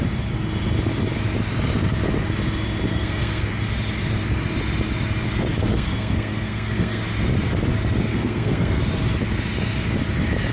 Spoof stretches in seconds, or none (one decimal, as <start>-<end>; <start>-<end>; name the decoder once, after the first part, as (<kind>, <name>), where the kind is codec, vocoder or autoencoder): 2.9-3.5 (codec, SNAC); 5.6-7.0; 8.1-8.8